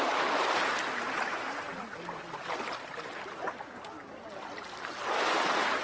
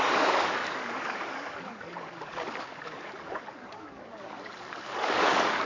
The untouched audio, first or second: first